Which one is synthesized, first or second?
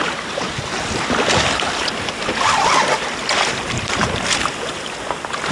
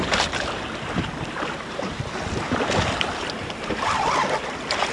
first